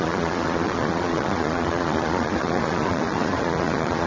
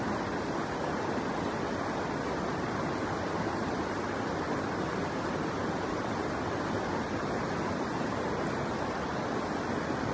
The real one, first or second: second